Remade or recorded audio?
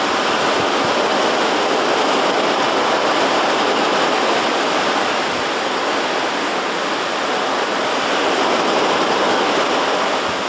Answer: recorded